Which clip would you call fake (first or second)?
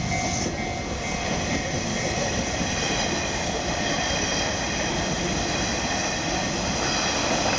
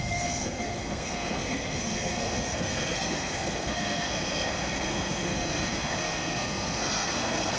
second